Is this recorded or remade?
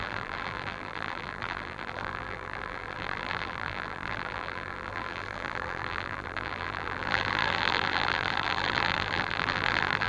remade